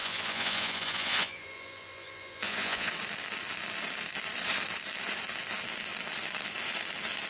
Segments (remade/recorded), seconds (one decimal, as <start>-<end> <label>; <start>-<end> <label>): 0.0-2.9 remade; 2.9-7.3 recorded

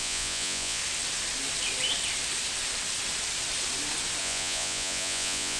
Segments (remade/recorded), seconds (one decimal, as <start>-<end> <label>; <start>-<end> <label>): 0.0-0.8 remade; 0.8-4.2 recorded; 4.2-5.6 remade

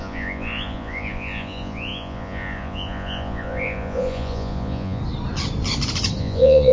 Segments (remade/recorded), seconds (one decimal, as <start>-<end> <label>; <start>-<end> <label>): 0.0-5.0 remade; 5.0-6.2 recorded; 6.2-6.7 remade

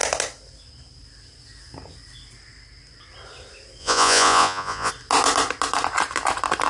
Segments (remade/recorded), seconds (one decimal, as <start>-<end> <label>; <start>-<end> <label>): 0.0-3.8 recorded; 3.8-4.9 remade; 4.9-6.7 recorded